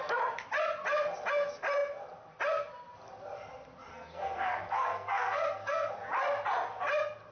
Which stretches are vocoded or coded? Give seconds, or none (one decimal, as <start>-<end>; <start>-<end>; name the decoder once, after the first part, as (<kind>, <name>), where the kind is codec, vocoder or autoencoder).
3.9-5.9 (codec, SNAC)